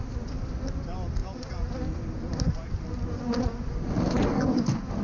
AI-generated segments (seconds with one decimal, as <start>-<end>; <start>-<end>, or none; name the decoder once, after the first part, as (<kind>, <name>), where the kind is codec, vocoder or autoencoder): none